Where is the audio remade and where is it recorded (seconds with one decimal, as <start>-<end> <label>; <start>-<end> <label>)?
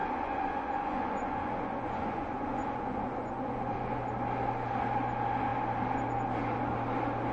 0.0-4.0 remade; 4.0-7.3 recorded